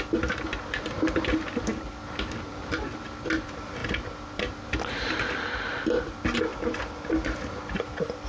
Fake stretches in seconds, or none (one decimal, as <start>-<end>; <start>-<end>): none